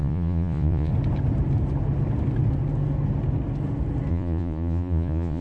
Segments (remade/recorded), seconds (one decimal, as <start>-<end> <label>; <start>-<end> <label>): 0.0-0.9 remade; 0.9-4.1 recorded; 4.1-5.4 remade